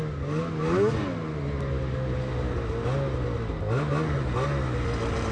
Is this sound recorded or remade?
recorded